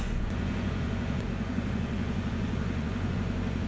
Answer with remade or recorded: remade